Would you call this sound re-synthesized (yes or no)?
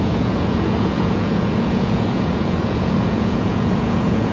yes